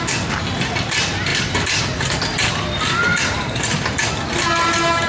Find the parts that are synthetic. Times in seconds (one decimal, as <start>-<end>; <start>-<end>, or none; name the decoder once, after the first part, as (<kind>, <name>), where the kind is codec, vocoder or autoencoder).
0.0-2.3 (vocoder, BigVGAN v2); 3.3-5.1